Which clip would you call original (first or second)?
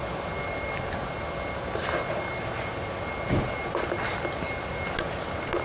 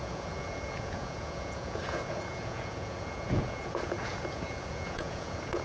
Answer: first